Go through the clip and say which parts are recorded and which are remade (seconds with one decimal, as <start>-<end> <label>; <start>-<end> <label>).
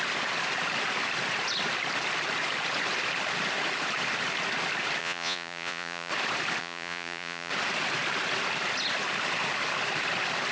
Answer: 0.0-5.0 recorded; 5.0-6.1 remade; 6.1-6.6 recorded; 6.6-7.5 remade; 7.5-10.5 recorded